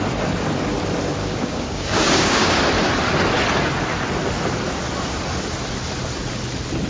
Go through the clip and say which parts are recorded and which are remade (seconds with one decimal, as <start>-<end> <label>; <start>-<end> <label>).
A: 0.0-1.2 recorded; 1.2-2.6 remade; 2.6-6.9 recorded